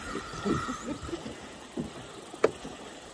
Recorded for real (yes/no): yes